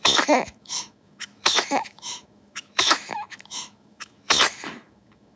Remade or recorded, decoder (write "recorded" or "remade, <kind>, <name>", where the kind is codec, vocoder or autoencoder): remade, autoencoder, DAC-VAE